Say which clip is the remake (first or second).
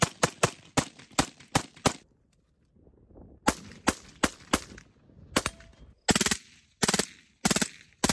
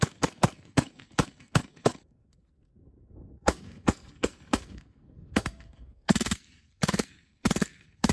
second